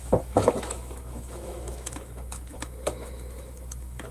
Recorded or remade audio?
remade